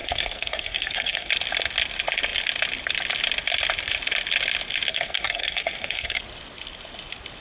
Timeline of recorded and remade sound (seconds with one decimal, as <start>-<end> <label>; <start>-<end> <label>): 0.0-1.3 remade; 1.3-4.9 recorded; 4.9-6.2 remade; 6.2-7.4 recorded